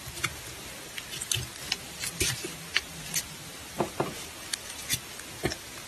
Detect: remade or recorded recorded